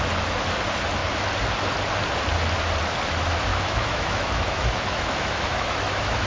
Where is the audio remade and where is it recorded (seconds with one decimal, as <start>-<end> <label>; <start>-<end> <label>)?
0.0-3.5 recorded; 3.5-6.3 remade